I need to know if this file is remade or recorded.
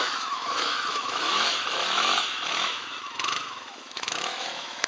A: remade